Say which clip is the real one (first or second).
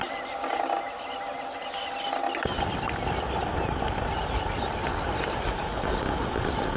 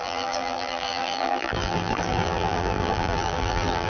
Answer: first